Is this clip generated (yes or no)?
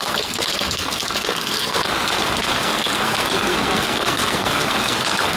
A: yes